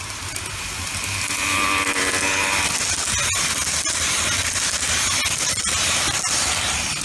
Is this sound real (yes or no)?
yes